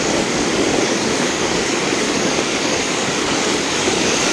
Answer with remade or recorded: remade